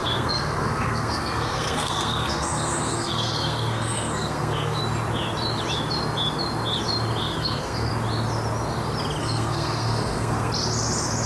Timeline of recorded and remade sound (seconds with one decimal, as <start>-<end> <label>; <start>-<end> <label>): 0.0-4.8 remade; 4.8-7.2 recorded; 7.2-7.9 remade; 7.9-9.2 recorded; 9.2-10.5 remade; 10.5-11.3 recorded